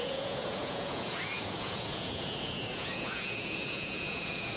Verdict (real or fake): fake